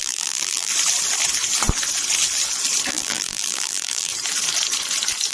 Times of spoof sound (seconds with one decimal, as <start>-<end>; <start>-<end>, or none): 0.0-0.7; 2.9-4.1